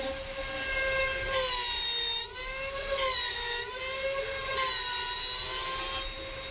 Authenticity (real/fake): real